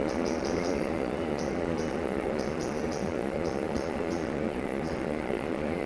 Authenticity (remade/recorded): remade